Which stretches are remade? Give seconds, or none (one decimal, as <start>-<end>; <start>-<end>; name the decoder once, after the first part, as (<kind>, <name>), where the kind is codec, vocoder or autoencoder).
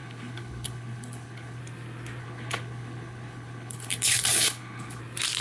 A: 0.0-1.6 (codec, HILCodec); 2.2-5.0